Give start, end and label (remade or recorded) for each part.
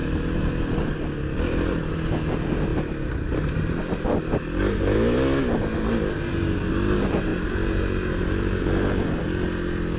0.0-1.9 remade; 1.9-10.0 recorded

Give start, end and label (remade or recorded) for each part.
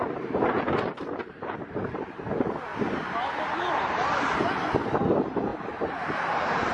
0.0-2.7 remade; 2.7-3.5 recorded; 3.5-6.7 remade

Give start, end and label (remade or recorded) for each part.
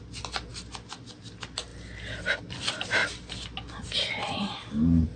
0.0-5.2 recorded